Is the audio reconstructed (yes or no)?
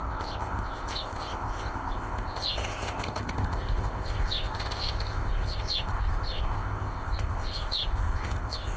yes